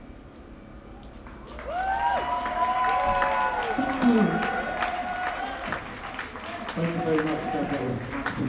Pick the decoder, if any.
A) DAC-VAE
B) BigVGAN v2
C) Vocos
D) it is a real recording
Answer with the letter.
D